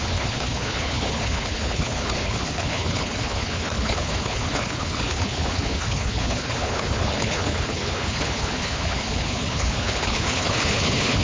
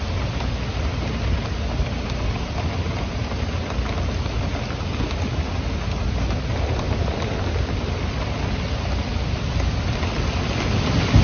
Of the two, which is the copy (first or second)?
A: first